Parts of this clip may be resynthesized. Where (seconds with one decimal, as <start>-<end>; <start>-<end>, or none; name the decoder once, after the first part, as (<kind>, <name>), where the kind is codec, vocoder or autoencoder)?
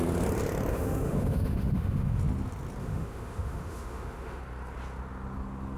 0.7-2.2 (autoencoder, DAC-VAE); 2.8-4.4